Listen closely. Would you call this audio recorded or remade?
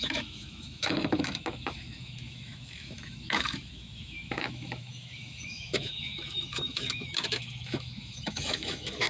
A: remade